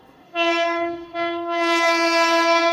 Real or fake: fake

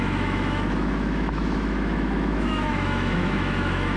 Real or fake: fake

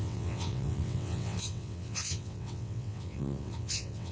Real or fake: fake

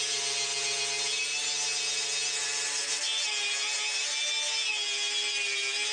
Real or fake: real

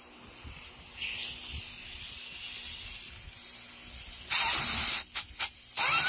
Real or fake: real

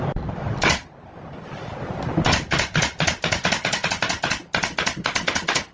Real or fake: real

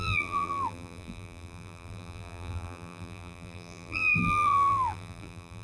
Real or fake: fake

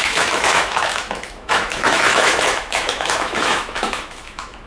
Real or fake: fake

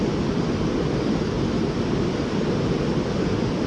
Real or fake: real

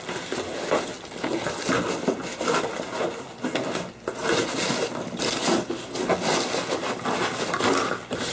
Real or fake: real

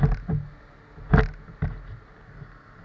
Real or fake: real